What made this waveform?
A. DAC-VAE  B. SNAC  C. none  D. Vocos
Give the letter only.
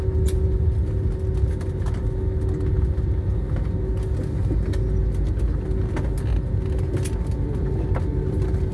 C